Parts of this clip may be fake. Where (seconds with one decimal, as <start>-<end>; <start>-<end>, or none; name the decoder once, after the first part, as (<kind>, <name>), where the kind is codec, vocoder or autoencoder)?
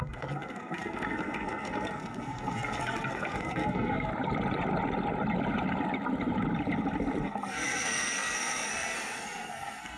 0.0-4.1 (codec, SNAC); 7.2-10.0